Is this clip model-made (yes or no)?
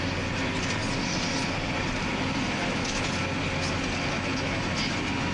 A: no